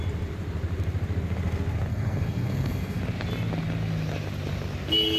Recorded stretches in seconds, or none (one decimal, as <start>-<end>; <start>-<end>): 0.0-1.9; 3.0-5.2